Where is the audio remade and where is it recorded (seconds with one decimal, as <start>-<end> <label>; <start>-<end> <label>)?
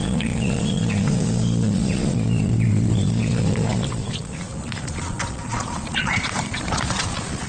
0.0-7.5 remade